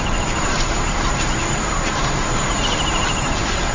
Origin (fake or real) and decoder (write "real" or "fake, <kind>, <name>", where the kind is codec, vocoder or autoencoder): fake, vocoder, BigVGAN v2